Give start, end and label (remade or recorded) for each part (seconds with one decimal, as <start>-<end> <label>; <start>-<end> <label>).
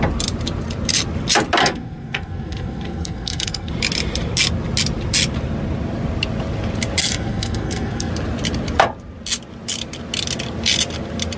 0.0-1.6 recorded; 1.6-3.7 remade; 3.7-7.0 recorded; 7.0-8.1 remade; 8.1-11.4 recorded